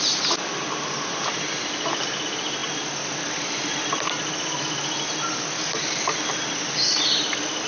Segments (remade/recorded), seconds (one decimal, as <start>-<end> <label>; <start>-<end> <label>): 0.0-7.7 recorded